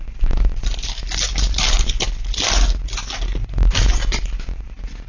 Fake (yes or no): no